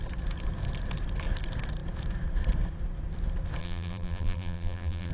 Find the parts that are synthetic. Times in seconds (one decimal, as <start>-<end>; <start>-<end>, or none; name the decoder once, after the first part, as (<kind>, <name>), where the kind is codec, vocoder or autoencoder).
3.6-5.1 (vocoder, BigVGAN v2)